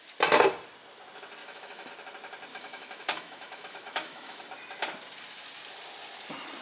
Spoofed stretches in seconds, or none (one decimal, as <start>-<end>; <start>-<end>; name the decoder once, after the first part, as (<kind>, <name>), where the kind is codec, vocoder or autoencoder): 1.4-1.9 (autoencoder, DAC-VAE); 2.5-4.4